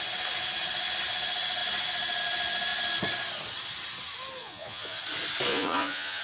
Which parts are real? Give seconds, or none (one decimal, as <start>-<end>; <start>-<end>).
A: 0.0-4.4; 5.0-5.5